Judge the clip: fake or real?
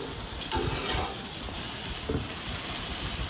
real